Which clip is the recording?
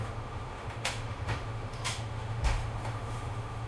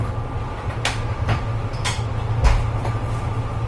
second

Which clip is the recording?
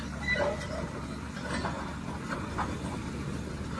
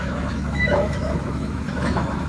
first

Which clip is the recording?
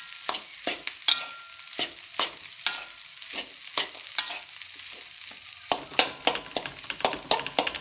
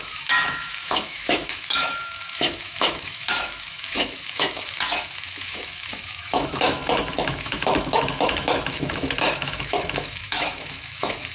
first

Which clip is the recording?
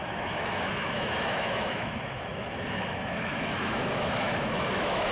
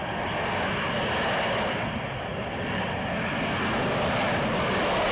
second